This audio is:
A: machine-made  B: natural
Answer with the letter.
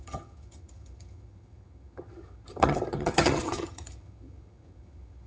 A